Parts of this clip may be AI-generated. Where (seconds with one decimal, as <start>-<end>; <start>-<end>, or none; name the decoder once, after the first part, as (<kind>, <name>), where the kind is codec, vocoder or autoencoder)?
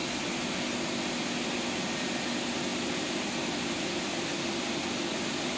1.9-4.3 (vocoder, BigVGAN v2); 5.1-5.6